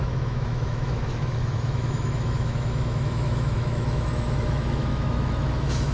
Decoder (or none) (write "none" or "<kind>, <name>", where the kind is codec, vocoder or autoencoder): autoencoder, DAC-VAE